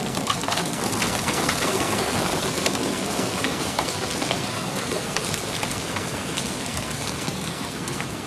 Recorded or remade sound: remade